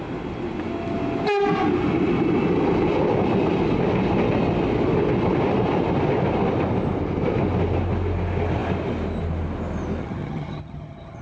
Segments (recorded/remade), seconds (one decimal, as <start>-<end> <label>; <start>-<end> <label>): 0.0-10.0 recorded; 10.0-11.2 remade